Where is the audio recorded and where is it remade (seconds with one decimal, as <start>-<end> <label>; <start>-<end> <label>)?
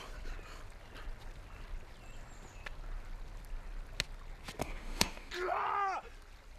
0.0-4.6 recorded; 4.6-5.3 remade; 5.3-6.6 recorded